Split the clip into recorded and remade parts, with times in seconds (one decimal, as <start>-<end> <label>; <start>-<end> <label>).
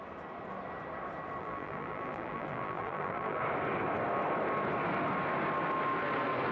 0.0-1.4 recorded; 1.4-3.4 remade; 3.4-6.5 recorded